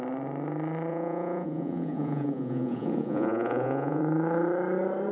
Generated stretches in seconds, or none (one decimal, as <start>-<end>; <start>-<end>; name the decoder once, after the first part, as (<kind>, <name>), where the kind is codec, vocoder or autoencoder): 0.9-4.0 (vocoder, Vocos)